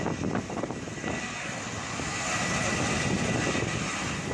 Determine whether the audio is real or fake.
real